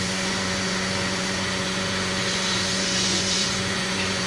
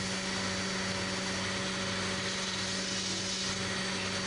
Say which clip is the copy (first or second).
first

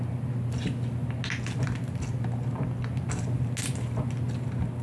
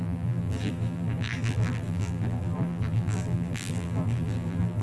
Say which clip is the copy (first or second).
second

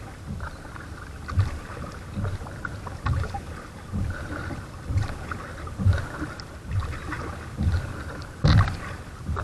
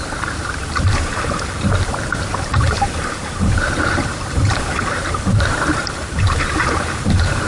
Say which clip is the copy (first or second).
second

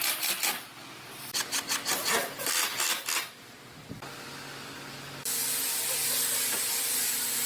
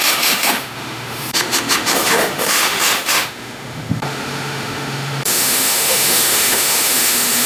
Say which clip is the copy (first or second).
second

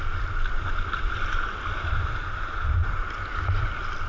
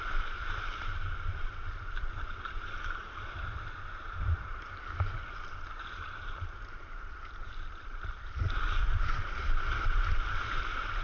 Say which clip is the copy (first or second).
second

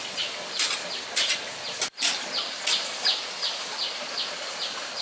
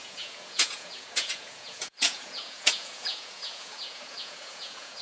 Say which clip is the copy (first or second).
second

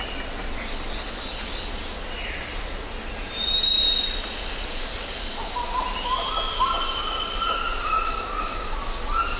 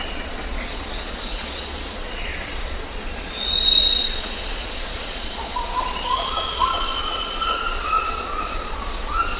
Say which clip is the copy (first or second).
second